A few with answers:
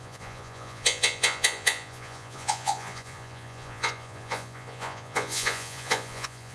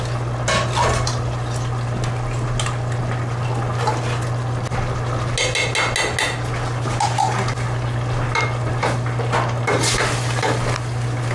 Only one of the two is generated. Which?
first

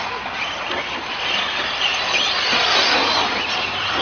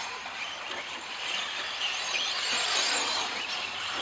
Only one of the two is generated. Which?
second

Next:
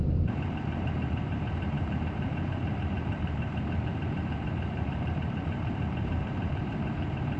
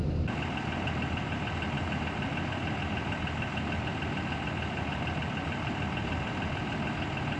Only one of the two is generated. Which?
first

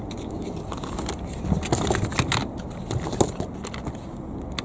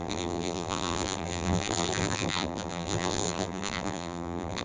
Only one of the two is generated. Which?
second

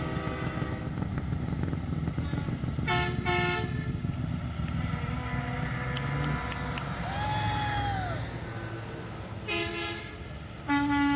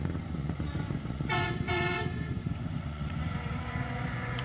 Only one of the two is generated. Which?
second